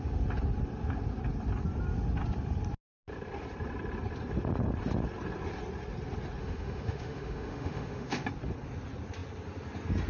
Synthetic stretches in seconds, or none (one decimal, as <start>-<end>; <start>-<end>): 6.4-8.2